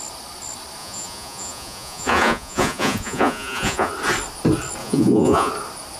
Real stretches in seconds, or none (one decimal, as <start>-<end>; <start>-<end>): 0.0-0.8; 3.9-4.8; 5.5-6.0